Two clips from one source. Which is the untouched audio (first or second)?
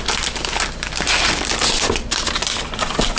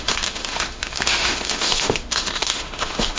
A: first